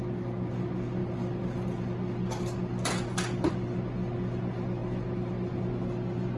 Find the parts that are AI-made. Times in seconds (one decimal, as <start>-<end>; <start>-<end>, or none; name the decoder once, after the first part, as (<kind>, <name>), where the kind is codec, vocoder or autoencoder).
none